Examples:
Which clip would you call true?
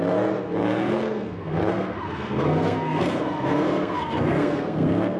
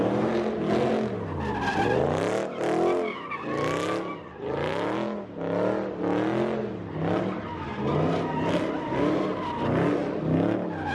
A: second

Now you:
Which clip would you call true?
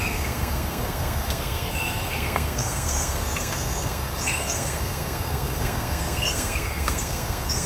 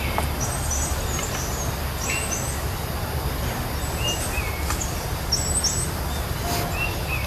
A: second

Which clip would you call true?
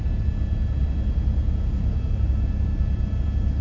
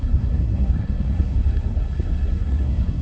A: first